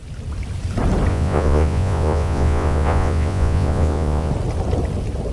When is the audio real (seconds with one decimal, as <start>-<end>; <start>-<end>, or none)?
0.0-1.1; 4.3-5.3